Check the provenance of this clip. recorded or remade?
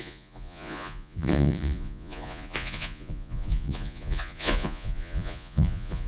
remade